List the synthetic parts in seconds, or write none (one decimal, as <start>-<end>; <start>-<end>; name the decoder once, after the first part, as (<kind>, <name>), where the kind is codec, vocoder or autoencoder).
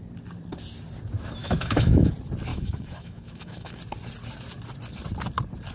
1.4-2.1 (autoencoder, DAC-VAE); 2.5-3.8